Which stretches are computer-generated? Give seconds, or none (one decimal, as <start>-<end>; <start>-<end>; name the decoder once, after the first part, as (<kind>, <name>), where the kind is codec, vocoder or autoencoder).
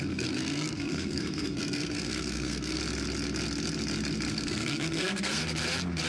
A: 0.0-2.8 (codec, SNAC); 4.3-5.4